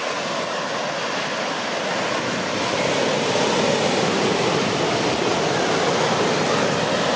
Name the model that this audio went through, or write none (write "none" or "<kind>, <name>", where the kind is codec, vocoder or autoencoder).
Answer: none